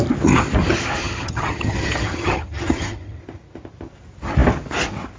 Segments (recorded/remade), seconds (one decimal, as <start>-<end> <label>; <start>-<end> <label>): 0.0-1.0 recorded; 1.0-3.2 remade; 3.2-5.2 recorded